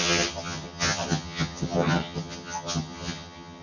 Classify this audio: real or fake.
fake